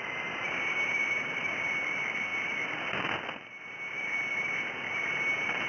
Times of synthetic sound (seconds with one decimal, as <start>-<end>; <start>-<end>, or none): none